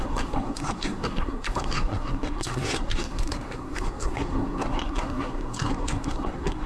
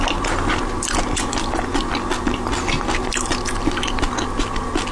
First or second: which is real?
second